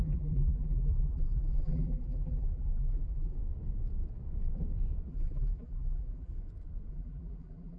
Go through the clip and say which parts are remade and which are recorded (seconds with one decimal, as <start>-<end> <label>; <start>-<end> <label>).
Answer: 0.0-3.4 remade; 3.4-5.1 recorded; 5.1-6.3 remade; 6.3-6.9 recorded; 6.9-7.8 remade